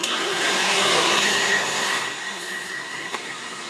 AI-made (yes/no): yes